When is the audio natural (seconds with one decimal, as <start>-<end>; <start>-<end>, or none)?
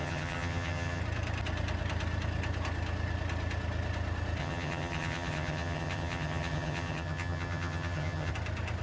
1.0-4.4; 8.3-8.8